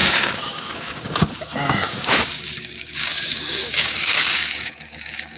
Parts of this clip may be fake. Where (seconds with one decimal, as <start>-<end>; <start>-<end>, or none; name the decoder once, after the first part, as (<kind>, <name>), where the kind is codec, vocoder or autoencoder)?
0.0-5.4 (codec, DAC)